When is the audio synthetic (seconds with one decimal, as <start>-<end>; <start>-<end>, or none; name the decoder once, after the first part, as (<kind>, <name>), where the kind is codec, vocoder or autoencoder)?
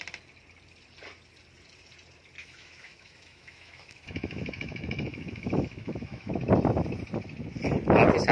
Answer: 2.4-6.3 (autoencoder, DAC-VAE)